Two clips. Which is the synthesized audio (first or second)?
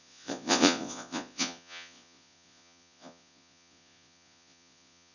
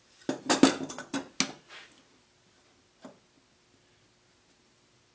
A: first